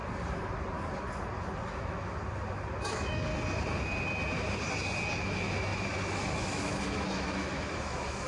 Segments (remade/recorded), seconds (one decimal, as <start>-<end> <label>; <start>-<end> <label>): 0.0-1.7 recorded; 1.7-2.2 remade; 2.2-2.8 recorded; 2.8-3.3 remade; 3.3-5.1 recorded; 5.1-8.3 remade